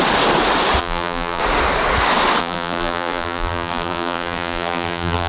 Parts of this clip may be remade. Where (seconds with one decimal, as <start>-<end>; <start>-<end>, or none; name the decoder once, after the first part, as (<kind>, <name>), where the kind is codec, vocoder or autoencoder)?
0.8-1.4 (vocoder, BigVGAN v2); 2.4-5.3